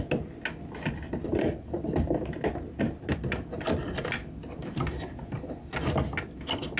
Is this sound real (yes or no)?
yes